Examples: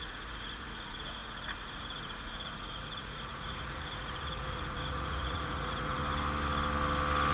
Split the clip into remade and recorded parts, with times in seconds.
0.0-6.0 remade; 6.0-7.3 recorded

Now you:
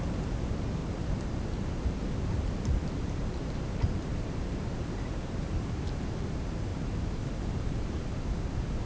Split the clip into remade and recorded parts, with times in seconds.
0.0-0.8 recorded; 0.8-1.5 remade; 1.5-2.7 recorded; 2.7-5.6 remade; 5.6-6.7 recorded; 6.7-8.2 remade; 8.2-8.9 recorded

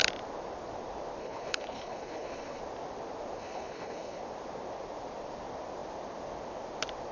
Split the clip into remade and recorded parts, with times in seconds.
0.0-1.2 recorded; 1.2-2.6 remade; 2.6-3.4 recorded; 3.4-4.2 remade; 4.2-7.1 recorded